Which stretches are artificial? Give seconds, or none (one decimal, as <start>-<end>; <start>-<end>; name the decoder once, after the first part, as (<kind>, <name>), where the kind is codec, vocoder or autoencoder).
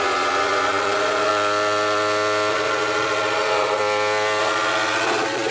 0.0-1.3 (vocoder, Vocos); 2.5-3.8; 4.4-5.5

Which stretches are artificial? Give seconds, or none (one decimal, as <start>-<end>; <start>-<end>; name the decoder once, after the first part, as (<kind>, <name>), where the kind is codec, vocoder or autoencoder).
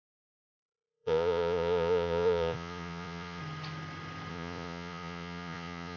0.0-3.4 (vocoder, Vocos); 4.3-6.0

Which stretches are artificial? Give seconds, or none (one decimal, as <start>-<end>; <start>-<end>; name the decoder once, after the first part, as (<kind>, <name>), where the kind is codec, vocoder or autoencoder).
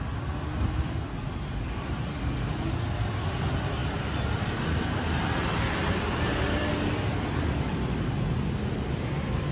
none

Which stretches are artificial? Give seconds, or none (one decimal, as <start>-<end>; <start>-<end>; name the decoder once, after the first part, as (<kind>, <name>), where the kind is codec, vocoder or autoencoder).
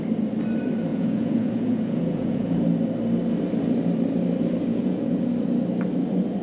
0.9-2.6 (vocoder, Vocos); 4.7-5.3